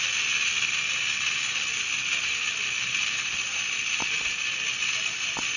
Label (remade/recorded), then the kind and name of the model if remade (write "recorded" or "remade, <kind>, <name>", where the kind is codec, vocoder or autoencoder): recorded